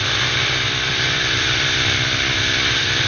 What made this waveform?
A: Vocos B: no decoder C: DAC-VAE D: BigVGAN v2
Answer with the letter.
D